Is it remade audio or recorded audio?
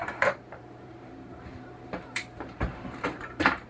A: remade